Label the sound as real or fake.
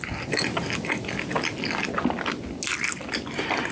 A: real